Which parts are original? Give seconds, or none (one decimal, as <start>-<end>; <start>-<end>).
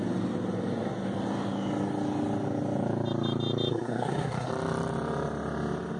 0.0-3.7; 4.5-6.0